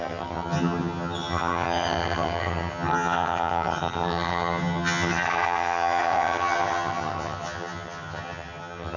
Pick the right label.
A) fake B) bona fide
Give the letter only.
A